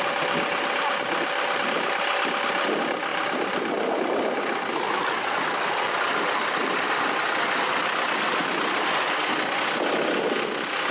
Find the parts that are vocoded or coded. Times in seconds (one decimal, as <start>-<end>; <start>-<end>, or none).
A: 3.1-7.4